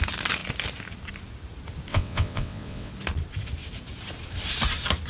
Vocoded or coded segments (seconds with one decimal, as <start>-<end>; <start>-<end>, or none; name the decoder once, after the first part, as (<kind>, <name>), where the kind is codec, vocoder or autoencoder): 1.9-2.9 (vocoder, WaveNeXt)